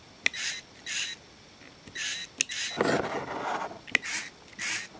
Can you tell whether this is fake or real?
real